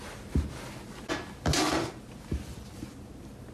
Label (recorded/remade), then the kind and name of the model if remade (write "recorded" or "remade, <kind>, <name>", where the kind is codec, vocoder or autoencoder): recorded